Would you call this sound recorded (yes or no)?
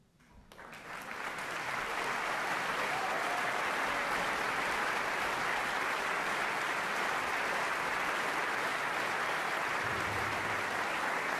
yes